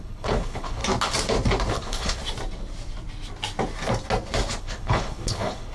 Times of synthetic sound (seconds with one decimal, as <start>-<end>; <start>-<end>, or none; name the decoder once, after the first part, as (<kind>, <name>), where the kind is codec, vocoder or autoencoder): 0.0-0.8 (codec, HILCodec); 1.7-2.2; 4.6-5.7